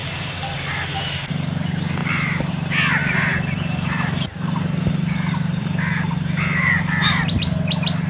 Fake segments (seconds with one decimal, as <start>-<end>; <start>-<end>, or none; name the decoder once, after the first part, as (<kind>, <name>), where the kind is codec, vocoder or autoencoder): 0.0-0.8 (vocoder, BigVGAN v2); 2.0-2.5; 3.0-7.4